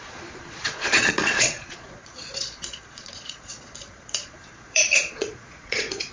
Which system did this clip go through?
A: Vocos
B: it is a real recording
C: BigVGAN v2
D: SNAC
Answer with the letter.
A